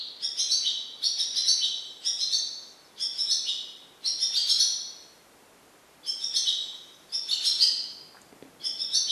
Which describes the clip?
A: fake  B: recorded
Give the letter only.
B